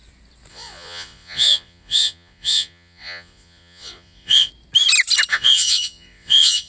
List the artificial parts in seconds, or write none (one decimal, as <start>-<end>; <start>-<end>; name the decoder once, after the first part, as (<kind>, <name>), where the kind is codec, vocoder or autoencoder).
0.5-4.5 (vocoder, Vocos); 5.3-6.7